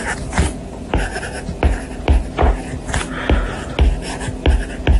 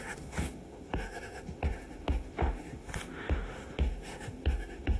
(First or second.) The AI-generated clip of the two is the second